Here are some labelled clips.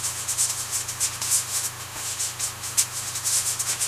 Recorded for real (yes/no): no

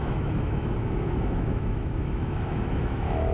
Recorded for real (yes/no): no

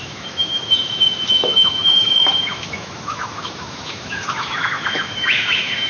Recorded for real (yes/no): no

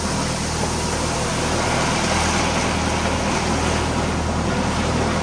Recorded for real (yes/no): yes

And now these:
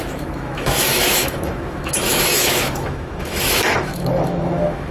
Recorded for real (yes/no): no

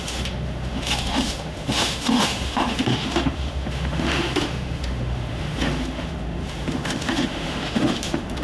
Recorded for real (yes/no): no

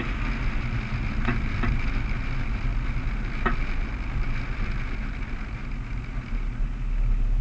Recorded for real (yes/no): yes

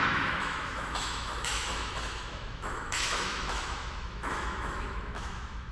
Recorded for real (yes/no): no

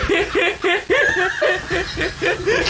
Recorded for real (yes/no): yes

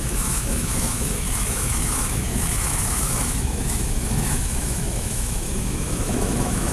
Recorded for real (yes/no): no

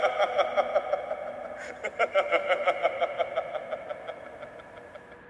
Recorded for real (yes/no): yes